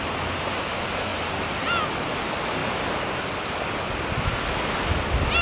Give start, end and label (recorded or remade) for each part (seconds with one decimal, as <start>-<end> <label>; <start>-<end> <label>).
0.0-5.4 recorded

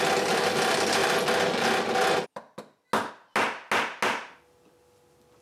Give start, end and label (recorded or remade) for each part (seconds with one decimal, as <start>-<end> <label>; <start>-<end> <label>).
0.0-5.4 recorded

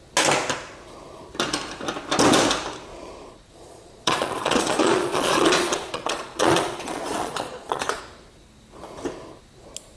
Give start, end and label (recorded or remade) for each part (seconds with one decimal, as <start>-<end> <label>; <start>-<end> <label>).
0.0-2.9 recorded; 2.9-8.0 remade; 8.0-10.0 recorded

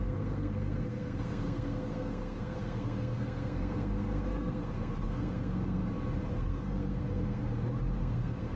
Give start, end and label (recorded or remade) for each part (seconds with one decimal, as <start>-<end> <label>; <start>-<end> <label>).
0.0-5.8 remade; 5.8-6.3 recorded; 6.3-7.4 remade; 7.4-8.0 recorded; 8.0-8.6 remade

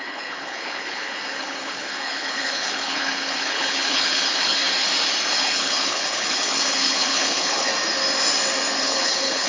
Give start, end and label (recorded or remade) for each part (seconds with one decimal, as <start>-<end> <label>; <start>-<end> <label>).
0.0-4.6 remade; 4.6-5.3 recorded; 5.3-7.7 remade; 7.7-8.8 recorded; 8.8-9.5 remade